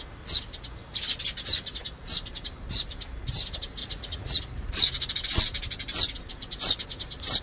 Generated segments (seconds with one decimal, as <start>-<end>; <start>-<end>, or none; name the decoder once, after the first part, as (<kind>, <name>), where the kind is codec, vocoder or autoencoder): 3.8-4.4 (vocoder, Vocos)